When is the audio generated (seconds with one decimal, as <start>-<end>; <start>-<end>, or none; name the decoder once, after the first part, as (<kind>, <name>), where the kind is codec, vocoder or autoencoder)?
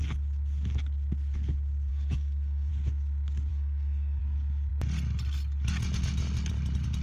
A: 1.9-2.7 (codec, SNAC); 3.5-4.2